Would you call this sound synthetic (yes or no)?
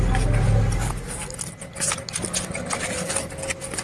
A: no